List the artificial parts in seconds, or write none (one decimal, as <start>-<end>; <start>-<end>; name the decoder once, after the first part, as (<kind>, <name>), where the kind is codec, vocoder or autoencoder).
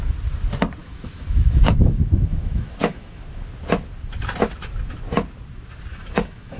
0.8-3.2 (autoencoder, DAC-VAE); 5.9-6.6